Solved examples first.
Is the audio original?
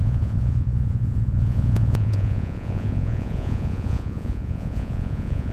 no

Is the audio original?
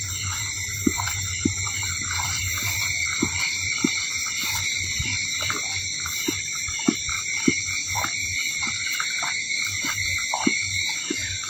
no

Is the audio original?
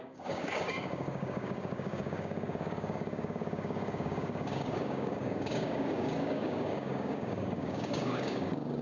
no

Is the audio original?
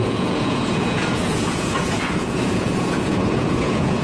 no